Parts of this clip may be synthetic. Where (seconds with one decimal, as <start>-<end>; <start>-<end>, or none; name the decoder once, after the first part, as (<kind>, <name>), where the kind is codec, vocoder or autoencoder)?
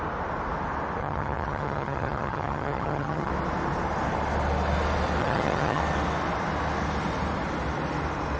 1.0-3.3 (vocoder, HiFi-GAN); 5.2-5.8